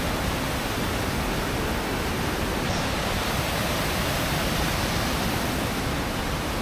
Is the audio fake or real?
real